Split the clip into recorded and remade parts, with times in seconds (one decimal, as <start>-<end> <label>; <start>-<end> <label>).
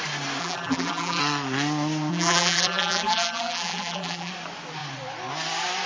0.0-0.4 recorded; 0.4-1.2 remade; 1.2-2.1 recorded; 2.1-4.3 remade; 4.3-5.9 recorded